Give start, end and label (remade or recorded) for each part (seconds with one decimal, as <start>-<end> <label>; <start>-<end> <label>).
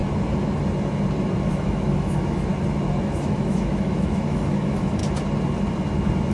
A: 0.0-1.5 recorded; 1.5-2.5 remade; 2.5-3.1 recorded; 3.1-5.0 remade; 5.0-6.3 recorded